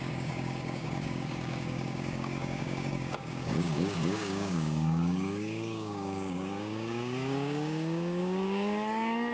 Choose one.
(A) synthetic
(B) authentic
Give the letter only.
A